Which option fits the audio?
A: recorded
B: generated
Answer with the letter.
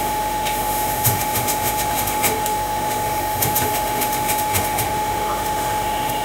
B